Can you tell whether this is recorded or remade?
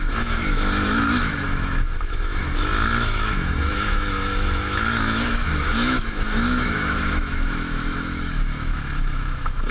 remade